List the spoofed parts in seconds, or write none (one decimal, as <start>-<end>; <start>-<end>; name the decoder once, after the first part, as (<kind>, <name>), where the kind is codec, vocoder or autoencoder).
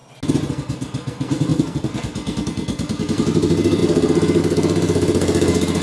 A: 0.5-5.8 (codec, SNAC)